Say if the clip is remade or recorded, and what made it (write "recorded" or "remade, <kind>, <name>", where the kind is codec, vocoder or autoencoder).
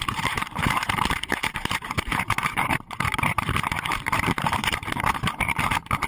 remade, vocoder, BigVGAN v2